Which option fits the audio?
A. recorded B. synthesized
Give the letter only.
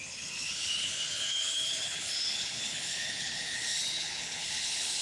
B